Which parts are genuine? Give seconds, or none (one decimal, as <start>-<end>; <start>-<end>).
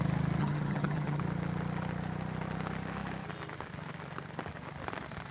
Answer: 0.0-0.4; 1.2-5.3